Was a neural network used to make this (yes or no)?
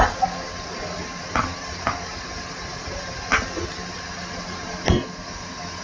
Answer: no